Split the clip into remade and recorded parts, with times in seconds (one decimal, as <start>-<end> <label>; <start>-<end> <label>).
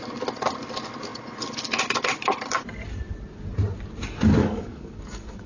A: 0.0-4.4 recorded; 4.4-5.5 remade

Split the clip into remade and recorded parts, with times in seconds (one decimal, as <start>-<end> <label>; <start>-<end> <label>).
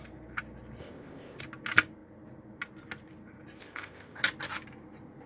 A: 0.0-0.8 recorded; 0.8-1.4 remade; 1.4-3.6 recorded; 3.6-4.2 remade; 4.2-5.3 recorded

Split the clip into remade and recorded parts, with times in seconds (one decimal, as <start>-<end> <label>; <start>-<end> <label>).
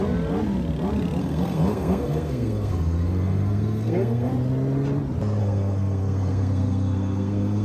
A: 0.0-1.2 recorded; 1.2-4.3 remade; 4.3-5.4 recorded; 5.4-7.6 remade